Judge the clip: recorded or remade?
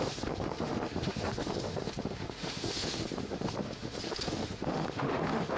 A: remade